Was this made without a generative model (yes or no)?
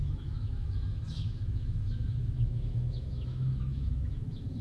no